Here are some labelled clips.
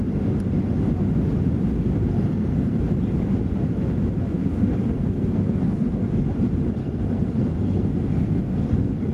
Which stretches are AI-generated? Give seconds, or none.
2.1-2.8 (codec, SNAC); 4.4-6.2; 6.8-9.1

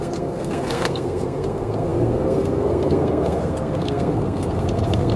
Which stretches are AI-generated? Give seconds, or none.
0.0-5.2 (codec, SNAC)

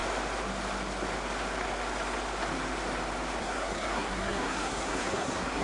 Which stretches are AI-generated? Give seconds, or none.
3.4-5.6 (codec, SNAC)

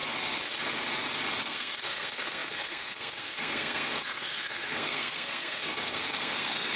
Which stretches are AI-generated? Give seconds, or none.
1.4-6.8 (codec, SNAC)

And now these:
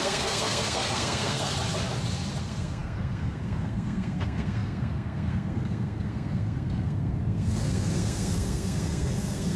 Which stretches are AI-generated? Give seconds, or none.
0.0-1.5 (codec, SNAC); 2.4-9.6

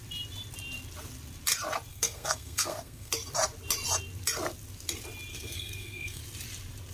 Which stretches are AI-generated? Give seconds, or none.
1.9-3.1 (codec, SNAC); 5.3-6.2

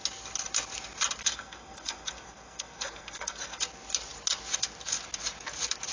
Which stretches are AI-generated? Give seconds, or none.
1.2-3.6 (codec, SNAC)